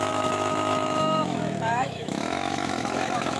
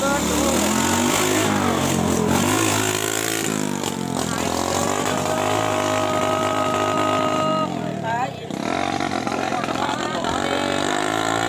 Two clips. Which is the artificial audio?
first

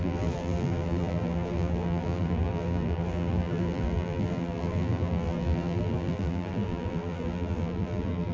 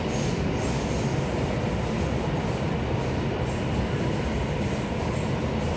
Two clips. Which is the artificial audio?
first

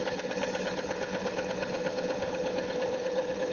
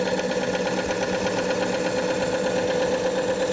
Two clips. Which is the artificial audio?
first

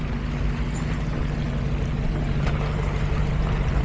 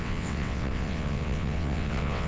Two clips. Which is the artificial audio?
second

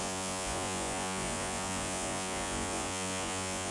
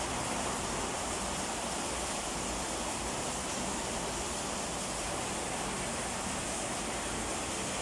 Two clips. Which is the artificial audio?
first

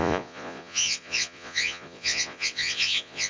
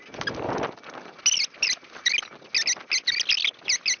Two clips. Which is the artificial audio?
first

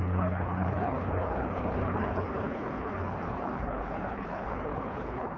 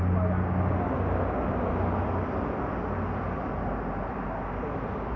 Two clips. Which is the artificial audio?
first